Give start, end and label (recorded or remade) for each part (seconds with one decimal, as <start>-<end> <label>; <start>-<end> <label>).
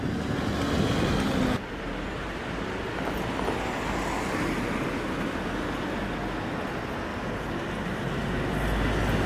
0.0-9.3 recorded